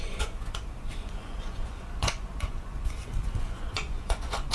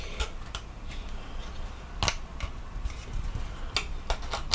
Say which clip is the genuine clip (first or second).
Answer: second